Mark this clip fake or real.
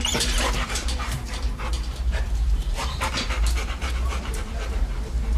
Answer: fake